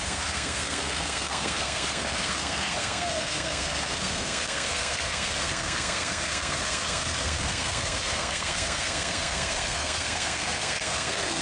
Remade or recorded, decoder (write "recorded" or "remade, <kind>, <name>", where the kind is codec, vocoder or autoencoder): remade, codec, SNAC